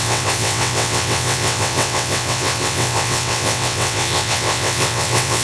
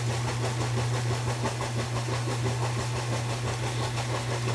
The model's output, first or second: first